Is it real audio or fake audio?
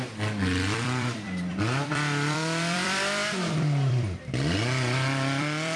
fake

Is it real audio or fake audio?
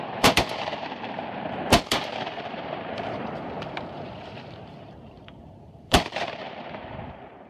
fake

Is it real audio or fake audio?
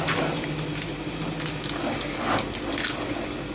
real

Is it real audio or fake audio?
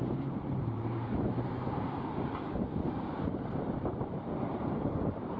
fake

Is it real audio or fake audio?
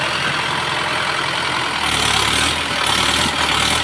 real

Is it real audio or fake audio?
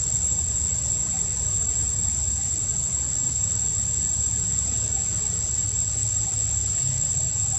real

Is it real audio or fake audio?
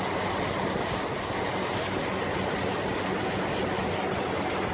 real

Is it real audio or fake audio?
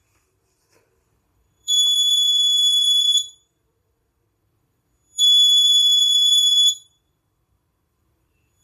fake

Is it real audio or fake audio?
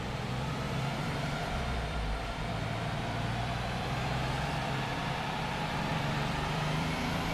fake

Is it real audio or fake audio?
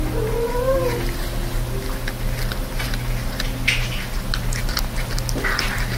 real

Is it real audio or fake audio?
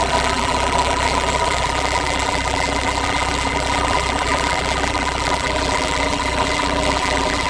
fake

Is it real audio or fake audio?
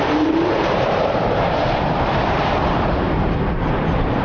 fake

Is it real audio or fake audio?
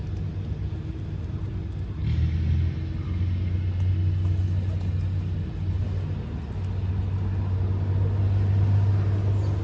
real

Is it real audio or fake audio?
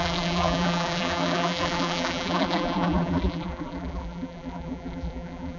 fake